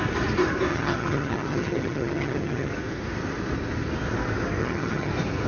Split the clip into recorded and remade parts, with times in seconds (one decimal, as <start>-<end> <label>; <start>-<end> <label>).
0.0-0.7 recorded; 0.7-2.7 remade; 2.7-4.6 recorded; 4.6-5.1 remade; 5.1-5.5 recorded